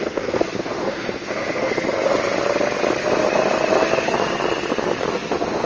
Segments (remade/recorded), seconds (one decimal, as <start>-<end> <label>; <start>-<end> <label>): 0.0-1.7 remade; 1.7-5.1 recorded; 5.1-5.7 remade